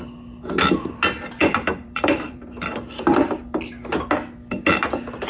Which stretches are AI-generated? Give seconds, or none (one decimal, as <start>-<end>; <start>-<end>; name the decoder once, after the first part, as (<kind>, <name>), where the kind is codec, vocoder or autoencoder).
1.4-3.4 (vocoder, BigVGAN v2)